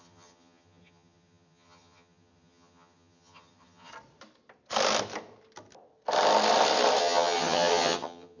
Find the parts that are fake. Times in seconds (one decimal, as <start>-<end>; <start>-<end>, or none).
0.0-3.9; 7.0-8.4